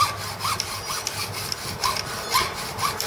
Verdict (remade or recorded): recorded